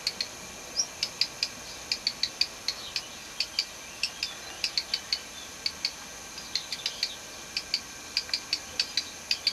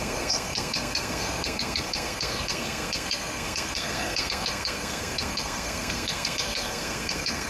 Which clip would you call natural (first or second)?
first